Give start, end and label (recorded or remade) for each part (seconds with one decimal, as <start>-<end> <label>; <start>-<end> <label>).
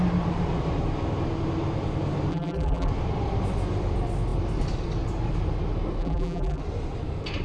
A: 0.0-2.3 recorded; 2.3-2.9 remade; 2.9-6.0 recorded; 6.0-6.6 remade; 6.6-7.4 recorded